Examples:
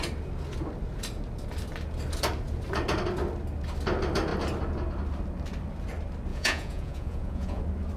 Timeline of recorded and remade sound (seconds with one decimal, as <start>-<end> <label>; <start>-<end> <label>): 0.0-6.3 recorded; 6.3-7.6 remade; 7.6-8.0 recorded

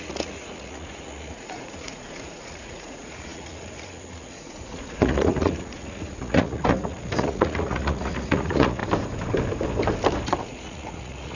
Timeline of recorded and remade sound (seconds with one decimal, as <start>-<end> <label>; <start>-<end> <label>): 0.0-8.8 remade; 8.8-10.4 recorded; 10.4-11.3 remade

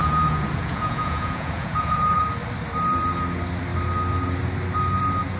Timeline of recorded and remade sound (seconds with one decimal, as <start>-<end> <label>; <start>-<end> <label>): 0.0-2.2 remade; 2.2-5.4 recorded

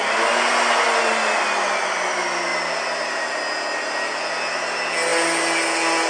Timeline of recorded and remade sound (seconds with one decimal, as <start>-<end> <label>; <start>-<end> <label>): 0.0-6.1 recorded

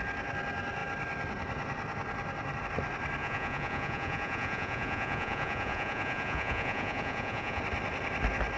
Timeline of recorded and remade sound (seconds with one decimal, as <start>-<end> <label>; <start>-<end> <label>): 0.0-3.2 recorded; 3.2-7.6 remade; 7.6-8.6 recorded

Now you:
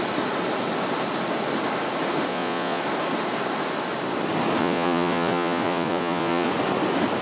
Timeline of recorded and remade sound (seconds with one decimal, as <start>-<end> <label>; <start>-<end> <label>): 0.0-2.3 recorded; 2.3-2.8 remade; 2.8-4.6 recorded; 4.6-6.5 remade; 6.5-7.2 recorded

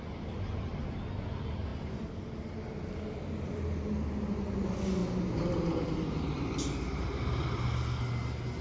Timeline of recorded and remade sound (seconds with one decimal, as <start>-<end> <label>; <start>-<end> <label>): 0.0-8.6 recorded

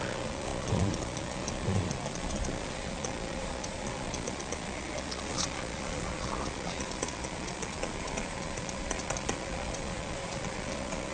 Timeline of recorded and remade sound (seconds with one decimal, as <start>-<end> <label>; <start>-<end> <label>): 0.0-11.1 remade